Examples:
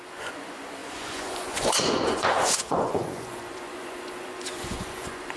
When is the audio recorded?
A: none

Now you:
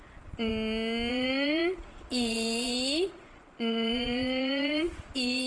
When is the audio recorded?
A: 0.5-1.1

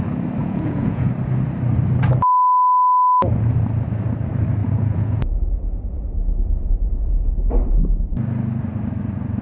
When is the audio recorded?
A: 0.0-0.4; 1.1-4.6; 5.2-9.4

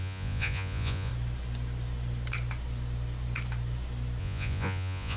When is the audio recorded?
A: 1.1-4.2

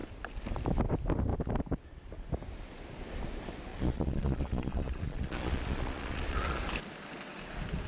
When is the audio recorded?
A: 0.0-3.7; 6.6-7.9

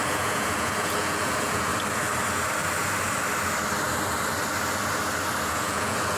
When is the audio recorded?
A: 1.7-5.4

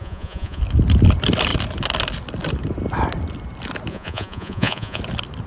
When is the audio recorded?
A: 0.6-3.9; 5.0-5.5